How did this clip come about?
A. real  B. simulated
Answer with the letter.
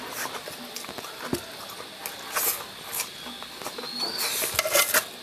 A